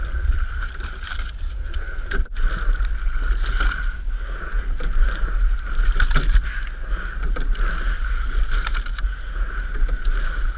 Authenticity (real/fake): real